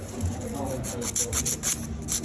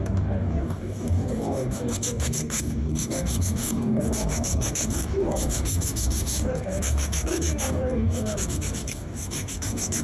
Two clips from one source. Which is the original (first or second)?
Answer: first